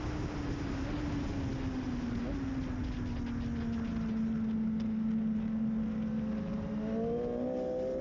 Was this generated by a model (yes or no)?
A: no